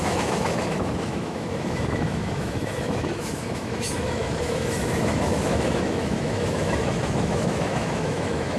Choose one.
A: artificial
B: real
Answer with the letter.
A